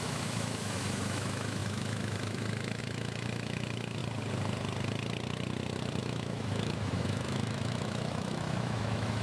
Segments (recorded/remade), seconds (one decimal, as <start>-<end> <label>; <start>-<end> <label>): 0.0-4.0 remade; 4.0-6.0 recorded; 6.0-9.2 remade